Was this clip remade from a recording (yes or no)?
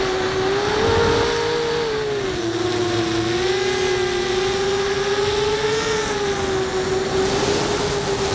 no